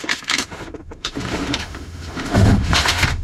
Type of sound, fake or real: fake